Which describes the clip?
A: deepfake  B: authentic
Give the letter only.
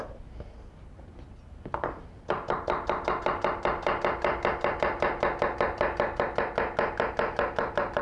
B